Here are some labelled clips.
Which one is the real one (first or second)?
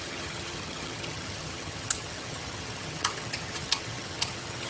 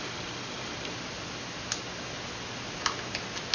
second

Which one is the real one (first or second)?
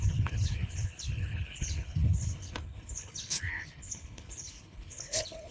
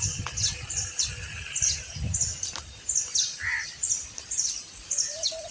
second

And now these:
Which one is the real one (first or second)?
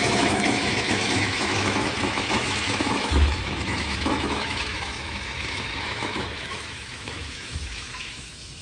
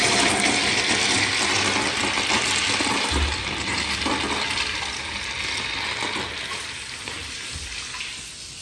second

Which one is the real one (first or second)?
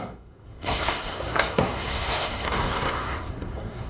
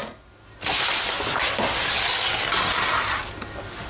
second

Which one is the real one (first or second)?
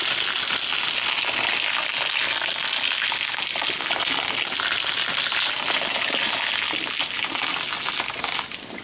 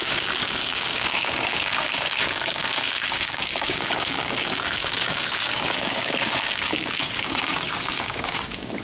first